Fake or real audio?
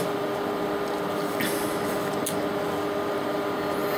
real